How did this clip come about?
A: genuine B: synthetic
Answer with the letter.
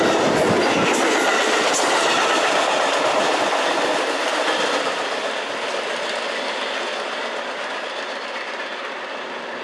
A